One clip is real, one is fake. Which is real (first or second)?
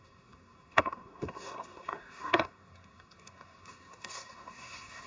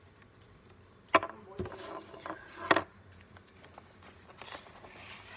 second